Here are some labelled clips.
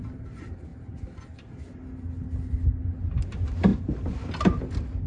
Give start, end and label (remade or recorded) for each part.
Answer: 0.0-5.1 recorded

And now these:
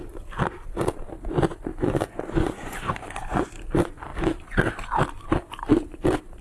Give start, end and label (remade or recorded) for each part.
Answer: 0.0-1.7 recorded; 1.7-3.5 remade; 3.5-6.4 recorded